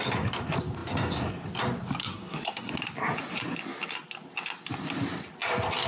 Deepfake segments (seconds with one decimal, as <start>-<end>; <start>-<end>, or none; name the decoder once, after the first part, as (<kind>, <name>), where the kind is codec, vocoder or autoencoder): 2.0-2.7 (codec, SNAC)

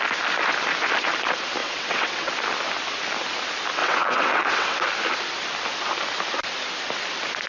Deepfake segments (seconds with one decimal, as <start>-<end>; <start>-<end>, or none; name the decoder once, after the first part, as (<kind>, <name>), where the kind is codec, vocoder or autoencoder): 1.6-2.3 (vocoder, WaveNeXt); 3.8-4.8

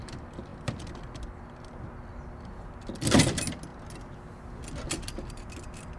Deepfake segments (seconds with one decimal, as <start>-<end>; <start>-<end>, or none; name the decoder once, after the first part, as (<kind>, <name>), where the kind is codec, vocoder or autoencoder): none

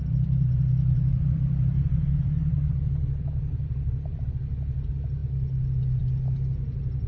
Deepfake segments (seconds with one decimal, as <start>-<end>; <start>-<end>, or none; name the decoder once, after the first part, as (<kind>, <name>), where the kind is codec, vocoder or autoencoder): 0.0-4.3 (vocoder, BigVGAN v2)

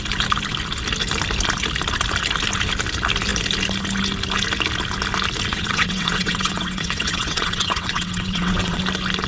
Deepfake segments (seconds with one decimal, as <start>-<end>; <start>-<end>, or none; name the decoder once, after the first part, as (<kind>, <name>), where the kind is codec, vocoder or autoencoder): 5.5-8.8 (vocoder, WaveNeXt)

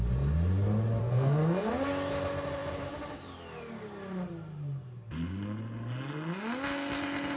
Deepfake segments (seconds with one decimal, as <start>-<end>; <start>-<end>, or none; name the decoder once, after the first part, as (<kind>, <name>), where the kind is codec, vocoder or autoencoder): 1.0-1.7 (codec, SNAC)